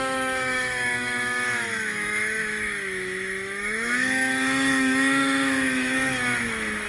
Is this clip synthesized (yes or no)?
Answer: yes